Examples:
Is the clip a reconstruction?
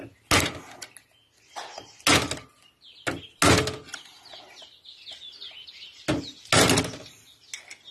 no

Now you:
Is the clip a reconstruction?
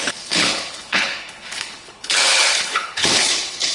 yes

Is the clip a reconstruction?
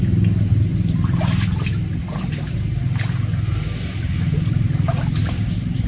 no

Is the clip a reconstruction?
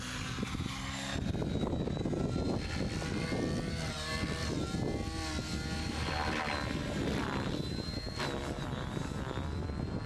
no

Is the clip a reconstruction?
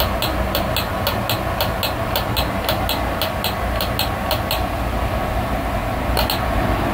no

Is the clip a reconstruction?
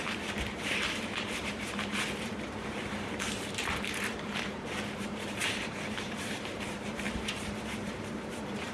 yes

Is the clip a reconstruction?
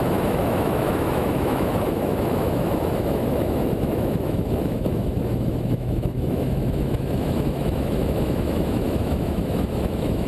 yes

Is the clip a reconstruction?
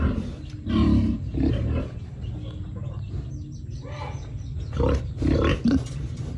no